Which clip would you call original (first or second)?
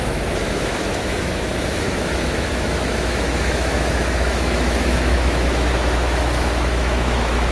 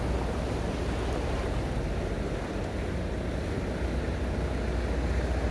second